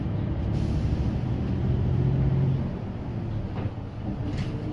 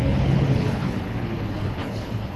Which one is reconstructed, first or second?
second